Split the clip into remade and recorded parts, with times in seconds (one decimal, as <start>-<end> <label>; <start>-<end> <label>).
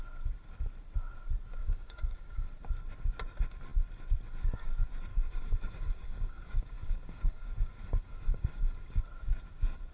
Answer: 0.0-1.6 recorded; 1.6-2.5 remade; 2.5-5.1 recorded; 5.1-9.0 remade; 9.0-9.9 recorded